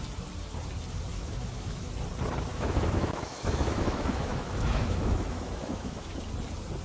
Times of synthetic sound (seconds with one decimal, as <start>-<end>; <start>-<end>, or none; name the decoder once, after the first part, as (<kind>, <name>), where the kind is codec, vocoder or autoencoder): 1.1-1.9 (autoencoder, DAC-VAE); 2.5-6.2